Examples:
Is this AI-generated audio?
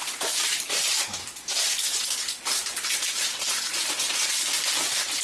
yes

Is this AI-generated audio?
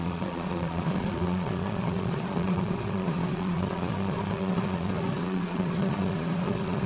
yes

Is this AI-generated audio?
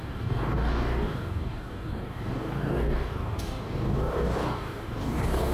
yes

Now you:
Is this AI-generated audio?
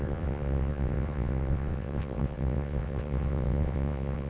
yes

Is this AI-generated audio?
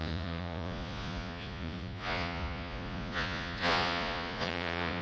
yes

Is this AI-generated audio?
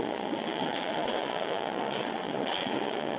yes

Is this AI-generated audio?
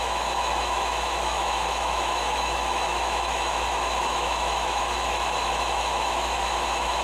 yes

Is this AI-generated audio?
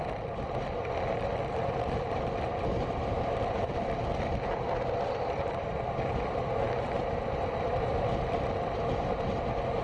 no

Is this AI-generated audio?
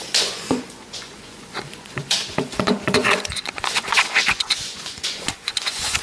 yes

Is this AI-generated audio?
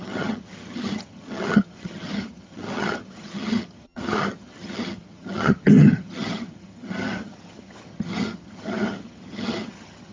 yes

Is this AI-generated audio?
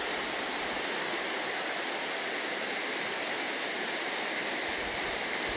no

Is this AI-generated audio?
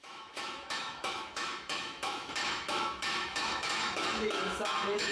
yes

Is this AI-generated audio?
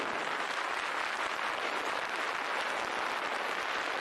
no